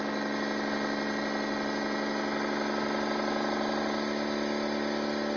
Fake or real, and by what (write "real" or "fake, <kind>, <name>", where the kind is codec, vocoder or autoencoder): real